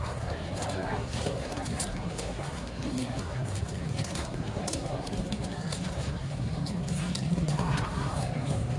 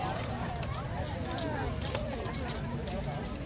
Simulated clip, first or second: first